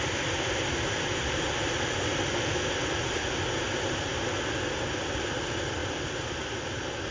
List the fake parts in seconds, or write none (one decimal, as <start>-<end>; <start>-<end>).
none